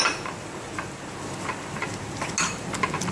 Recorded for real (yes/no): yes